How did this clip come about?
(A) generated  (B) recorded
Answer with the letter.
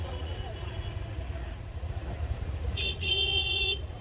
A